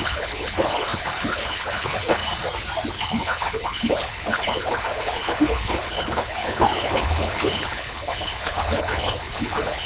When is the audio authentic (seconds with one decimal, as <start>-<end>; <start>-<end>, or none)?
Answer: 2.2-2.9